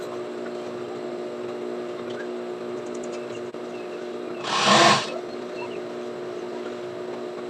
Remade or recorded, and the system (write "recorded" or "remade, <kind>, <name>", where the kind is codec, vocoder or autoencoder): recorded